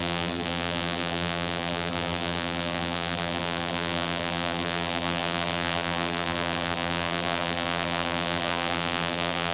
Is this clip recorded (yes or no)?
no